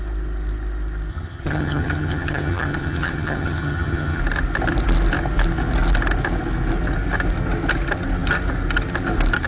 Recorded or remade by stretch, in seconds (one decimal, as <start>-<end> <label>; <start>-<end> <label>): 0.0-1.1 recorded; 1.1-4.2 remade; 4.2-9.5 recorded